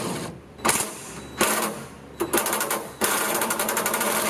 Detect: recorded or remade remade